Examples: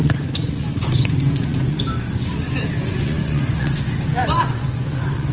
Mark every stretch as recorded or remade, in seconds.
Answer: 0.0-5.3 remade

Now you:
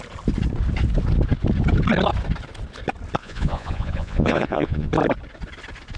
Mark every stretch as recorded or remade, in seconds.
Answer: 0.0-3.2 recorded; 3.2-4.9 remade; 4.9-6.0 recorded

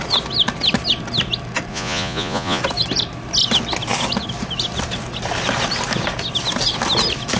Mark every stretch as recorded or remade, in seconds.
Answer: 0.0-1.7 recorded; 1.7-2.6 remade; 2.6-7.4 recorded

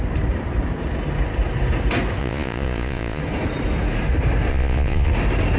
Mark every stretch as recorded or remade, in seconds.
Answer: 0.0-2.2 recorded; 2.2-3.2 remade; 3.2-4.5 recorded; 4.5-5.1 remade; 5.1-5.6 recorded

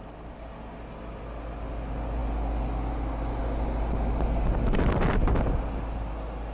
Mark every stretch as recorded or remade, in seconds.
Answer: 0.0-6.5 recorded